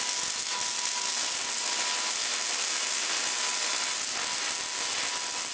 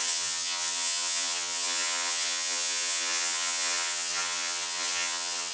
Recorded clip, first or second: first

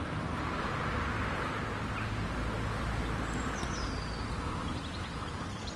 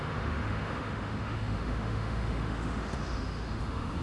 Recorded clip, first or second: first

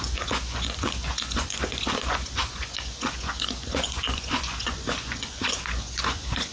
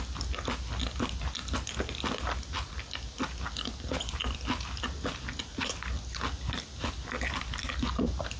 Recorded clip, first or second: second